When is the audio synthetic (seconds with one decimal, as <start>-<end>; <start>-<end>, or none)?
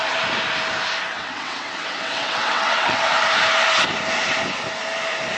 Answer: 1.1-3.3